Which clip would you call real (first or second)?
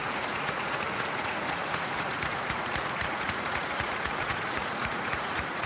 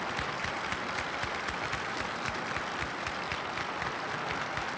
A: second